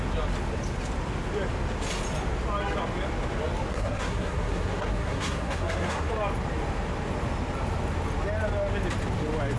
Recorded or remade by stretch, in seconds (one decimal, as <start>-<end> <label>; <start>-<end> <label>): 0.0-3.7 recorded; 3.7-6.1 remade; 6.1-9.6 recorded